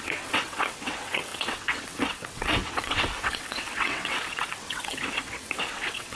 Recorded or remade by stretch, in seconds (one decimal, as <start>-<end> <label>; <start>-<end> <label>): 0.0-6.2 remade